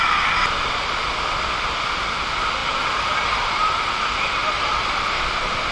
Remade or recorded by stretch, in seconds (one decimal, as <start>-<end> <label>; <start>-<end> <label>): 0.0-2.6 recorded; 2.6-5.2 remade; 5.2-5.7 recorded

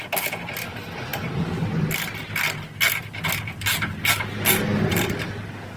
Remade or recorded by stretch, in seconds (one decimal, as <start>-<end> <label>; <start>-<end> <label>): 0.0-4.7 recorded; 4.7-5.3 remade; 5.3-5.8 recorded

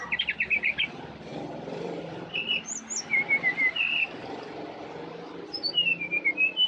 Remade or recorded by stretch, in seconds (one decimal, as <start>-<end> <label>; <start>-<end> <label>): 0.0-1.3 recorded; 1.3-2.0 remade; 2.0-4.2 recorded; 4.2-5.1 remade; 5.1-6.7 recorded

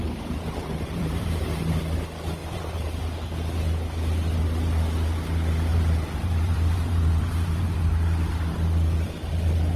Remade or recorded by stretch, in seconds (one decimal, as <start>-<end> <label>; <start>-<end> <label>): 0.0-1.2 remade; 1.2-2.4 recorded; 2.4-3.0 remade; 3.0-5.7 recorded; 5.7-7.8 remade; 7.8-9.8 recorded